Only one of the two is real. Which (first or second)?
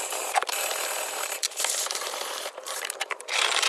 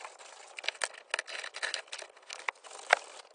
second